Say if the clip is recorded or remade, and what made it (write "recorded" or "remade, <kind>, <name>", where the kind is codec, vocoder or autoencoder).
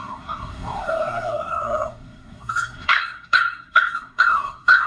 remade, codec, SNAC